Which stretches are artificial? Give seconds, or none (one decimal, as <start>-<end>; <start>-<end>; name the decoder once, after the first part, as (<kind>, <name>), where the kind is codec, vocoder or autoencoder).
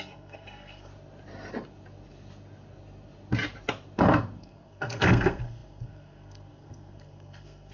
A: 0.0-0.9 (codec, SNAC); 4.4-7.7